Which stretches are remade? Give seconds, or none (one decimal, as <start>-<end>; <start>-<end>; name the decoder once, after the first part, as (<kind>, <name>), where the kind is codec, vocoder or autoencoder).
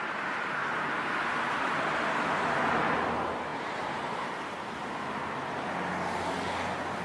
0.6-1.8 (vocoder, BigVGAN v2); 3.5-4.2